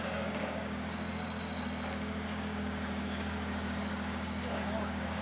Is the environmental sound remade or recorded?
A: remade